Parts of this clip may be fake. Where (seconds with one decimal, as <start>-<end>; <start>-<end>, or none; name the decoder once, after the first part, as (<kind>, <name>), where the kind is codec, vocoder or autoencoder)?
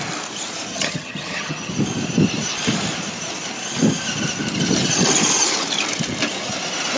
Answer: 0.7-1.7 (vocoder, HiFi-GAN)